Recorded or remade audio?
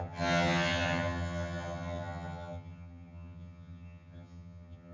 remade